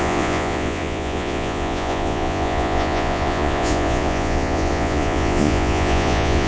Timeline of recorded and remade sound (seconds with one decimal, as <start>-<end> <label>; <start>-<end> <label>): 0.0-6.5 remade